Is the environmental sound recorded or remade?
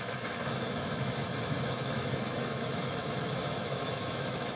remade